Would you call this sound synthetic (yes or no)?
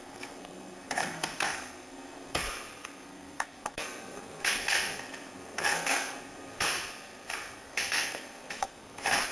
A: yes